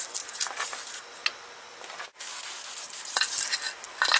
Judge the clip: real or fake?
real